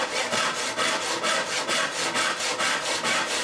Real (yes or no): yes